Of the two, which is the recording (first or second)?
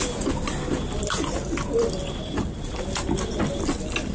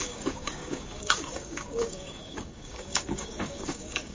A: first